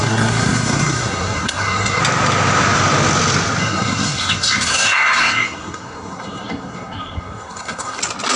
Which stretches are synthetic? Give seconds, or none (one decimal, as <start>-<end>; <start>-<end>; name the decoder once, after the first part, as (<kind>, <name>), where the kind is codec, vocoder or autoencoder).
0.0-2.0 (codec, SNAC); 3.6-8.0